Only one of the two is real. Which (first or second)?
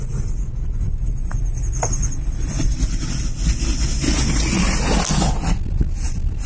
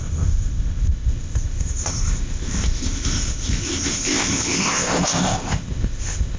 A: first